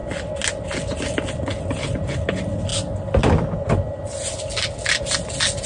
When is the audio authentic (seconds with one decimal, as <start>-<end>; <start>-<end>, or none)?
0.0-5.7

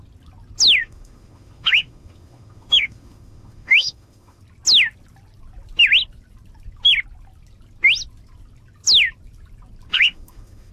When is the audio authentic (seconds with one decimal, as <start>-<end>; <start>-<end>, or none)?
0.0-0.8; 4.4-9.9

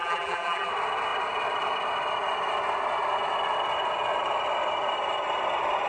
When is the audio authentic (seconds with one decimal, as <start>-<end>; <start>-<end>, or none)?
0.7-5.9

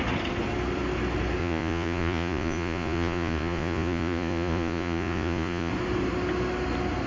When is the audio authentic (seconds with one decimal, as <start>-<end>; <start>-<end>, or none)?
0.0-1.4; 5.7-7.1

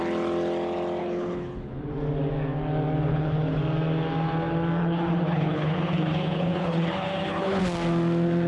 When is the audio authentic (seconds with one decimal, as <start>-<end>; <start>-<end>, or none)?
0.0-1.0; 1.9-3.1; 3.6-4.8; 7.6-8.5

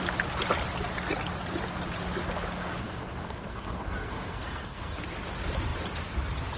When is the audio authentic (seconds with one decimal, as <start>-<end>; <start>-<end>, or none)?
0.0-2.8; 5.0-6.6

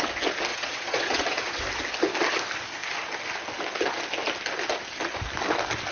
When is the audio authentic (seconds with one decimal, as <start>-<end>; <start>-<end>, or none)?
0.0-0.5; 1.6-5.9